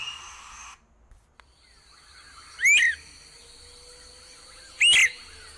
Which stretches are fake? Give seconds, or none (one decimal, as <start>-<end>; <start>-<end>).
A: none